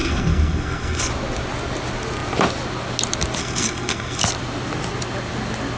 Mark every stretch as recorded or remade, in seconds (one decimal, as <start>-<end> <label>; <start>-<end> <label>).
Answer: 0.0-1.1 remade; 1.1-3.4 recorded; 3.4-4.2 remade; 4.2-5.8 recorded